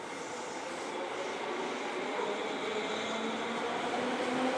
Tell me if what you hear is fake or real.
real